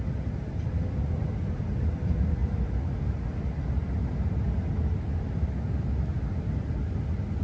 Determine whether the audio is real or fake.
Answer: real